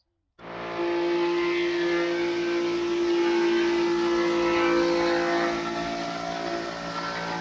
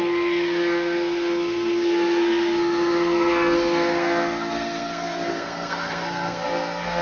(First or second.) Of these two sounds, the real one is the first